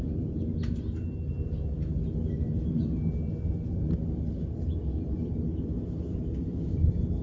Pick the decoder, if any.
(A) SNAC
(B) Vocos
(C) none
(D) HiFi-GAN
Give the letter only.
C